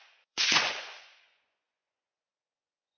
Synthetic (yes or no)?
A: yes